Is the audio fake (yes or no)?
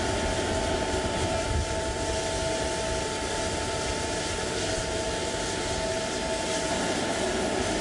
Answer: no